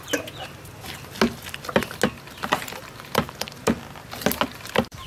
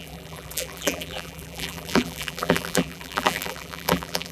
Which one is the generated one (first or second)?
second